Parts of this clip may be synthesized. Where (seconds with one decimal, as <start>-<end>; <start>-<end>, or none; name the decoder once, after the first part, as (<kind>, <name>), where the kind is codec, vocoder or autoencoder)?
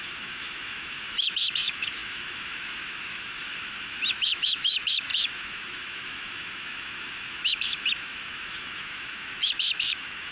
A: 0.0-10.3 (autoencoder, DAC-VAE)